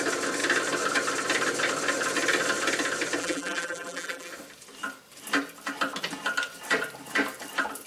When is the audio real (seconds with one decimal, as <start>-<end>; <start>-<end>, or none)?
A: 0.0-3.2; 4.3-7.9